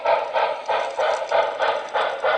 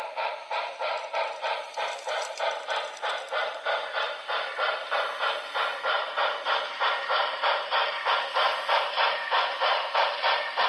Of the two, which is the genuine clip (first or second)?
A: first